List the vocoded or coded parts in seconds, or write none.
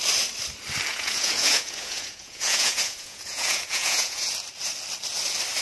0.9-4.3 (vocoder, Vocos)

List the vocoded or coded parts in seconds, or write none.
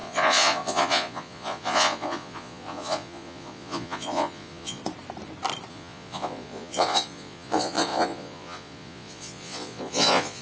0.0-4.8 (vocoder, Vocos); 5.7-10.4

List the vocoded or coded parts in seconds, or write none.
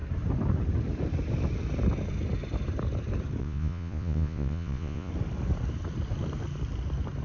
3.4-5.1 (vocoder, Vocos)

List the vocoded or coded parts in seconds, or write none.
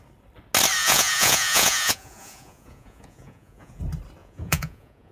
0.8-3.8 (vocoder, Vocos); 4.2-5.1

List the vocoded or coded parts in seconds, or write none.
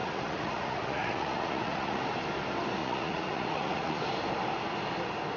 0.0-2.0 (vocoder, Vocos); 2.8-4.0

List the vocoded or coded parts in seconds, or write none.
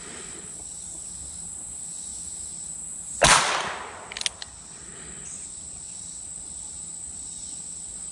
none